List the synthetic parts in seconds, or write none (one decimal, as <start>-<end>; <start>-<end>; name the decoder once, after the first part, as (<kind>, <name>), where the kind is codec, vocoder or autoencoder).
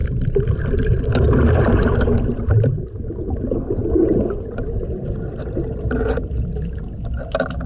none